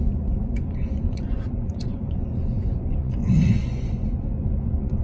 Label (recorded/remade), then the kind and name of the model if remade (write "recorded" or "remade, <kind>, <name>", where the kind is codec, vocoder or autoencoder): remade, vocoder, Vocos